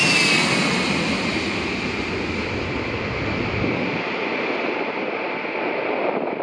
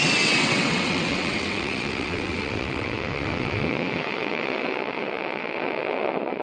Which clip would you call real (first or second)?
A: first